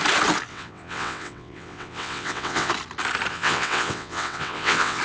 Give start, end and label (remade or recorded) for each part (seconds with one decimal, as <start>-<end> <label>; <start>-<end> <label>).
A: 0.0-0.5 recorded; 0.5-2.7 remade; 2.7-3.3 recorded; 3.3-5.0 remade